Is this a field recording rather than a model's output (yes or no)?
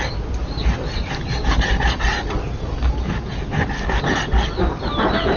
yes